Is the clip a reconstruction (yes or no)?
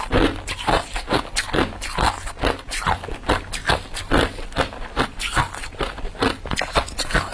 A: no